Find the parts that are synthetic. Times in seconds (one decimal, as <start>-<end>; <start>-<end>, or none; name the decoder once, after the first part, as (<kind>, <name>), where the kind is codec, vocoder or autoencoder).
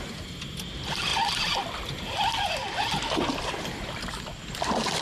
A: none